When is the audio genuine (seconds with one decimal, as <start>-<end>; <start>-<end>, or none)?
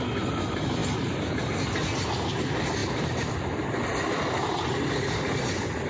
0.0-5.9